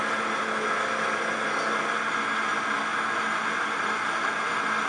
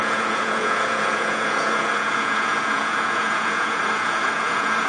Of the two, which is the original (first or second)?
first